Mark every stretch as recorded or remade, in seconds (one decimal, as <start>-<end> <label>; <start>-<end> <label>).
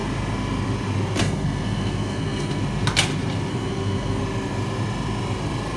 0.0-1.2 recorded; 1.2-2.6 remade; 2.6-3.5 recorded; 3.5-4.2 remade; 4.2-5.8 recorded